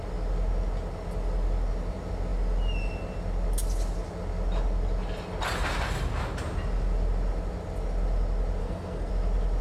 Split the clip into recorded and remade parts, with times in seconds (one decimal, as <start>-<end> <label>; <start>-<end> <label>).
0.0-8.6 recorded; 8.6-9.1 remade; 9.1-9.6 recorded